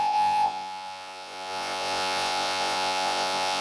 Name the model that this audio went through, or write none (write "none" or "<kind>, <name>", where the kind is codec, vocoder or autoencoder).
vocoder, Vocos